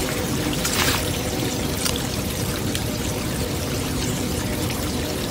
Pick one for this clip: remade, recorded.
remade